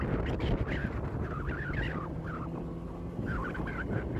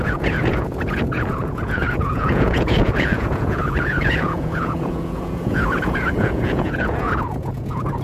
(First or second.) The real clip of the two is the first